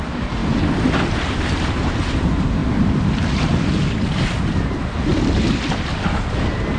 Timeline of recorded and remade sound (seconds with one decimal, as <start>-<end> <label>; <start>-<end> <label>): 0.0-0.4 remade; 0.4-1.3 recorded; 1.3-2.6 remade; 2.6-4.4 recorded; 4.4-5.1 remade; 5.1-6.8 recorded